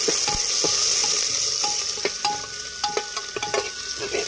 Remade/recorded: recorded